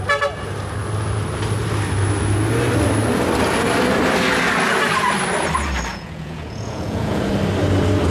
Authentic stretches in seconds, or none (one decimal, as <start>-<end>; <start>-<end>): 0.0-5.9; 7.3-8.1